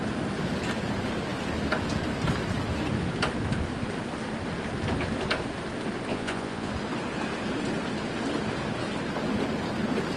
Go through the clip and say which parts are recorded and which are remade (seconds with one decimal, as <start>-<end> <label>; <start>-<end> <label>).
0.0-6.1 recorded; 6.1-6.7 remade; 6.7-10.2 recorded